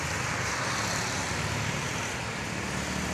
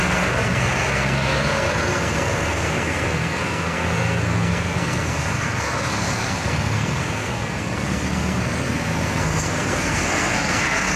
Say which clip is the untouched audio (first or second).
first